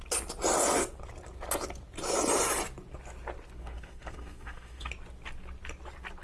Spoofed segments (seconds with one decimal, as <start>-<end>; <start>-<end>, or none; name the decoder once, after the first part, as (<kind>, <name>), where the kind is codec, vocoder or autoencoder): 3.6-4.9 (codec, SNAC)